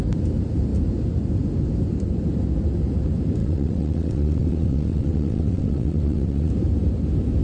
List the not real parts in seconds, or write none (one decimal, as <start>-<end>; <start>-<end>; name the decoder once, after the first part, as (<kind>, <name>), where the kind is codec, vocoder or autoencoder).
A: 3.4-6.5 (vocoder, WaveNeXt)